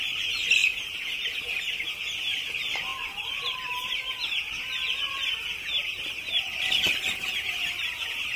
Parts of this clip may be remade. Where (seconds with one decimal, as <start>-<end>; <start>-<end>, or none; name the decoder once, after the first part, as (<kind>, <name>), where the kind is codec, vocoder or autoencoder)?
2.9-4.1 (vocoder, BigVGAN v2)